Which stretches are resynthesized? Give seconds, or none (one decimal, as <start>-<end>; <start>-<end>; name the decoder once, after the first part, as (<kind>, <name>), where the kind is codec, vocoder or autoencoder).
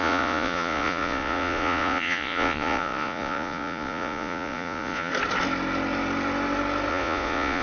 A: 0.0-5.1 (vocoder, Vocos); 6.9-7.6